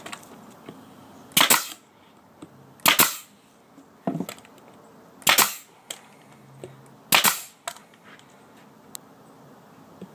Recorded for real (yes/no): yes